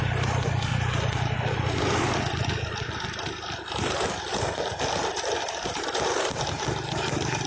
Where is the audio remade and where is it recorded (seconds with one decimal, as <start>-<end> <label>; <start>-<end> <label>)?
0.0-0.7 remade; 0.7-1.7 recorded; 1.7-7.5 remade